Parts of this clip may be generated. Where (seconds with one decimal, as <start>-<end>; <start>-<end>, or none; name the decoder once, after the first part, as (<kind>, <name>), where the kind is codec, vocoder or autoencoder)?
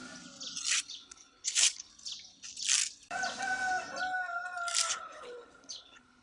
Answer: 0.9-1.9 (codec, HILCodec); 4.9-6.2